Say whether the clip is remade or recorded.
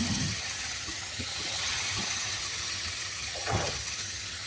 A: remade